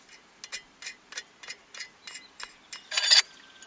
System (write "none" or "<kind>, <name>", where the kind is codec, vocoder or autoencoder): none